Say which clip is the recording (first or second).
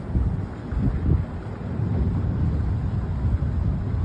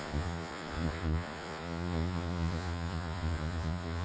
first